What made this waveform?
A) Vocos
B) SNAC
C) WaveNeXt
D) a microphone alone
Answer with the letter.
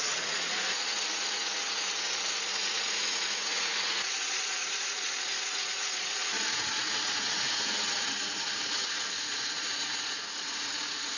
A